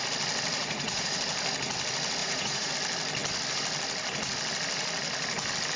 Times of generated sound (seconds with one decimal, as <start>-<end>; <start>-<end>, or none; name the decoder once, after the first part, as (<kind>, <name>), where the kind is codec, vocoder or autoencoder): 0.6-1.2 (vocoder, Vocos); 2.2-2.7